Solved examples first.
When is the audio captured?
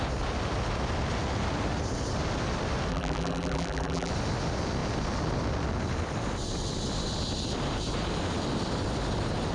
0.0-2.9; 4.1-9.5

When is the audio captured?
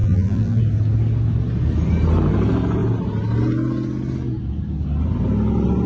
0.6-5.9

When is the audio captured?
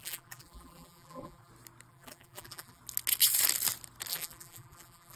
1.5-1.9; 2.8-4.1